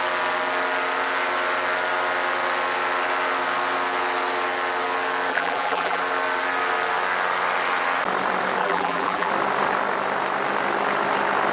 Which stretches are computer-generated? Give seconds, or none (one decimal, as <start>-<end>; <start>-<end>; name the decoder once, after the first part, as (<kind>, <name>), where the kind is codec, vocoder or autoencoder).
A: 5.3-6.0 (vocoder, BigVGAN v2); 8.6-9.3